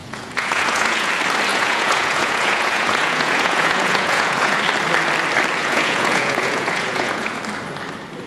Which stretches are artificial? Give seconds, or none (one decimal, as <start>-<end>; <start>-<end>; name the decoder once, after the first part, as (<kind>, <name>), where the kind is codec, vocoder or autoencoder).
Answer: 0.0-1.1 (vocoder, Vocos); 1.5-4.6; 5.6-7.4